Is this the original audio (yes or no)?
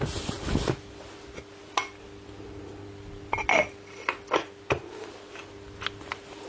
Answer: yes